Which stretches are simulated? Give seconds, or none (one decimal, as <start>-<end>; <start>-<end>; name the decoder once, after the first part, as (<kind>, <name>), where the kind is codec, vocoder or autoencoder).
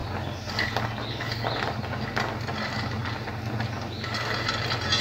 none